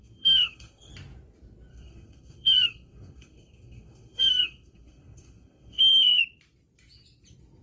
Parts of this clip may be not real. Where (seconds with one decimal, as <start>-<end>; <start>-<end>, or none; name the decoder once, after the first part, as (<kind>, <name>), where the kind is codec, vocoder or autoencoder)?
0.0-0.9 (codec, SNAC); 1.7-6.2